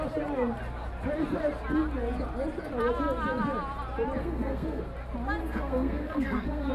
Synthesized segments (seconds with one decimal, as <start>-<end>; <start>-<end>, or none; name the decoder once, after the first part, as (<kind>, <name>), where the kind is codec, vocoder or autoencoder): 4.2-4.8 (codec, SNAC); 5.4-6.7

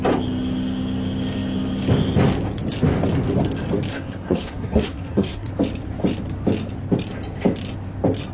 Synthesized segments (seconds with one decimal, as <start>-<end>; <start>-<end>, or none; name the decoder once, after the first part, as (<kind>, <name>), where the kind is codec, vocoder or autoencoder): 3.9-5.5 (codec, SNAC)

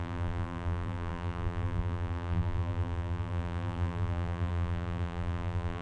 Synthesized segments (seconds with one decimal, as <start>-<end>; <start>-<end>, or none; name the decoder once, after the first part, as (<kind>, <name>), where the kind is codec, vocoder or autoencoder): 0.0-5.8 (vocoder, BigVGAN v2)

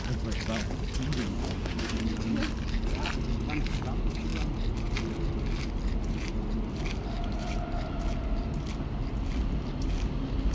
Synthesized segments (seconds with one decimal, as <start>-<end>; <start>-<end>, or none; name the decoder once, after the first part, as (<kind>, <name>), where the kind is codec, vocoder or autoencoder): 1.4-2.0 (autoencoder, DAC-VAE)

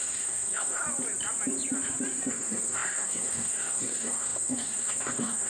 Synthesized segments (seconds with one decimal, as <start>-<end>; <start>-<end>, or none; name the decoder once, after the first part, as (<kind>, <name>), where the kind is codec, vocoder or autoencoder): 0.0-0.8 (codec, SNAC); 2.3-5.5

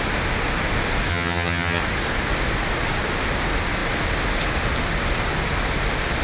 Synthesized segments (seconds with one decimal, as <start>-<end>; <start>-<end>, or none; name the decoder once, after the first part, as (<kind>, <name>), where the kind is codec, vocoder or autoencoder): 1.1-1.8 (vocoder, HiFi-GAN)

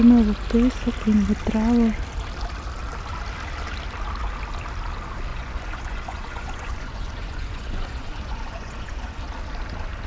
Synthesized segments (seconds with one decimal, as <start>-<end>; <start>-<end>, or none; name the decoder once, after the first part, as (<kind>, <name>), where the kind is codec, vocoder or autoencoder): 5.3-9.2 (vocoder, Vocos)

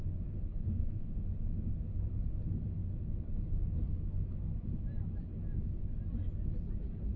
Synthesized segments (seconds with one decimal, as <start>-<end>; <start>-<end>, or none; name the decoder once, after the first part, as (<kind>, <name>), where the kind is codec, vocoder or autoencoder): 0.5-1.1 (codec, SNAC)